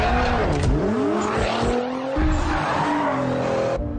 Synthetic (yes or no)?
no